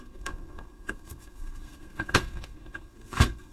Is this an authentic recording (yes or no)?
no